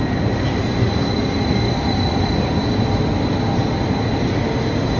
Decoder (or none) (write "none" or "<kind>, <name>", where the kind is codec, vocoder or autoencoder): none